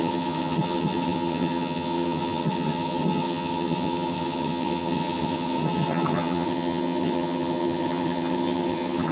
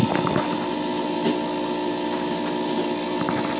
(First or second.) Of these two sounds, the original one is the second